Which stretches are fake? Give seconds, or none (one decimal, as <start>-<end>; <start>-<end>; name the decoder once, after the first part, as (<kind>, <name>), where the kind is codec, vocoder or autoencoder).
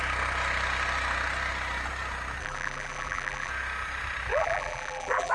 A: 2.4-3.5 (vocoder, BigVGAN v2); 4.3-5.3